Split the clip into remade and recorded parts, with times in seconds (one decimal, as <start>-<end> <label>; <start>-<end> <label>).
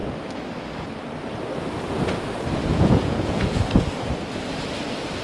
0.0-2.7 recorded; 2.7-3.6 remade; 3.6-5.2 recorded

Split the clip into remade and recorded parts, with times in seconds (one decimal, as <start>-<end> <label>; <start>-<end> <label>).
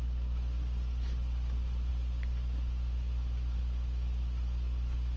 0.0-5.2 recorded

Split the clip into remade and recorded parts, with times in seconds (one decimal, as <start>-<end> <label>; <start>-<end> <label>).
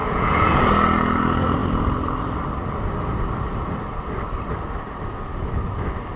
0.0-0.6 remade; 0.6-6.2 recorded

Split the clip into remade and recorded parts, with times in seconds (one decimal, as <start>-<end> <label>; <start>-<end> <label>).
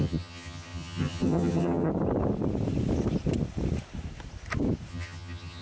0.0-1.9 remade; 1.9-4.9 recorded; 4.9-5.6 remade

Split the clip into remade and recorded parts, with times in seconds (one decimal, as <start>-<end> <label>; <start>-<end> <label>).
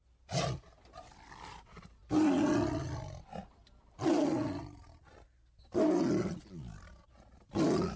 0.0-8.0 recorded